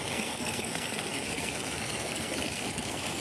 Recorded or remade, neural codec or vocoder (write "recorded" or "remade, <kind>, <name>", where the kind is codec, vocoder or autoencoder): remade, codec, SNAC